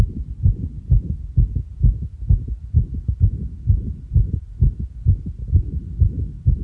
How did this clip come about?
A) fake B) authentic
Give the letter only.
B